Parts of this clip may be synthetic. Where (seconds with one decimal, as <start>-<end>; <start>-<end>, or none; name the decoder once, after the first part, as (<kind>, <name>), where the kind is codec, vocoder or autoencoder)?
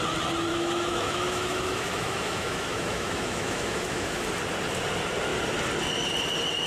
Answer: 0.5-4.3 (autoencoder, DAC-VAE)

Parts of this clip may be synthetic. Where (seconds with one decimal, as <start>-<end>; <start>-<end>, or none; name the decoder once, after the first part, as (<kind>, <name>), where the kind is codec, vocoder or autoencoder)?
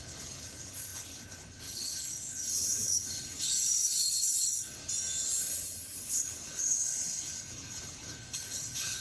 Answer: 0.0-4.8 (codec, HILCodec); 5.4-9.0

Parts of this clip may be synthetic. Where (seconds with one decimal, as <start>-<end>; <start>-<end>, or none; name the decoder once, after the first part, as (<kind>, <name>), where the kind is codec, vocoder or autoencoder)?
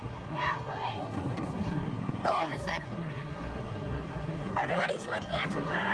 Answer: 0.0-5.9 (codec, SNAC)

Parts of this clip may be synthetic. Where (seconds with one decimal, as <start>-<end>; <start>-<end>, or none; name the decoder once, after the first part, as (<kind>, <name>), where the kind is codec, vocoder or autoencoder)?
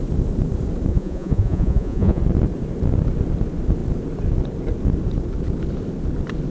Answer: 0.9-2.2 (vocoder, Vocos)